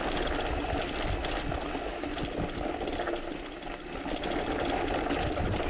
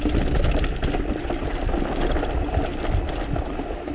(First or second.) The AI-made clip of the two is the second